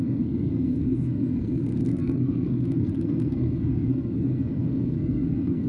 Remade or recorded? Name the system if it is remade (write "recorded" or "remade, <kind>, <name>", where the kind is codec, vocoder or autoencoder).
remade, codec, SNAC